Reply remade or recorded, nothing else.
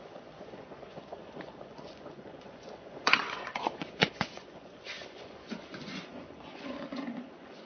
remade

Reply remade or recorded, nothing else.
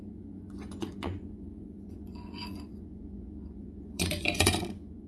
remade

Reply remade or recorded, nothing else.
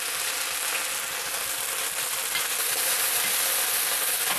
recorded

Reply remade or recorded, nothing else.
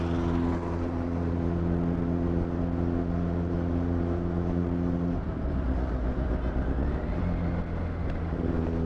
recorded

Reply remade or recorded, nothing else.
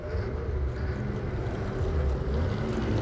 recorded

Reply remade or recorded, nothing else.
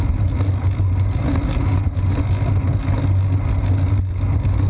recorded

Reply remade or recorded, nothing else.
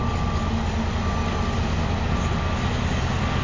recorded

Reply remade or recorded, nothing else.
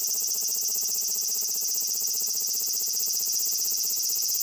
remade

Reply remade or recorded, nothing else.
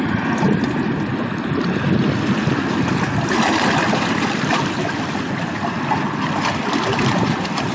recorded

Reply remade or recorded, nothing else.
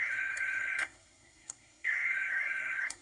remade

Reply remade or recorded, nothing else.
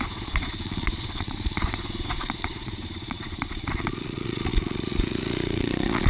remade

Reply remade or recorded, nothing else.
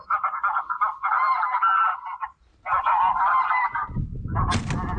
recorded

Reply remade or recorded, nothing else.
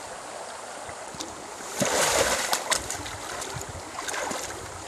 recorded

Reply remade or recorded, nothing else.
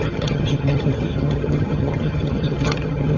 remade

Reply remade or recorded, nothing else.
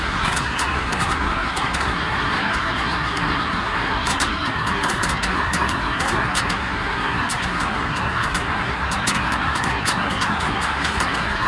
remade